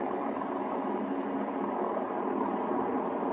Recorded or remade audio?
recorded